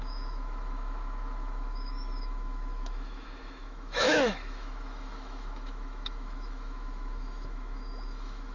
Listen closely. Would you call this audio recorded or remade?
remade